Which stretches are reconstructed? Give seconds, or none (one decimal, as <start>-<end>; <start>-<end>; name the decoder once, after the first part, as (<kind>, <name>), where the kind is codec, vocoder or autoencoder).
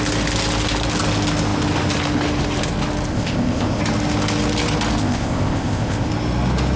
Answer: 3.1-3.8 (codec, ZipCodec); 5.0-6.1